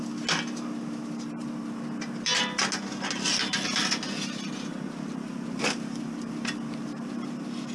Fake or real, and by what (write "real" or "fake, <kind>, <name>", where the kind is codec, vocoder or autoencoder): real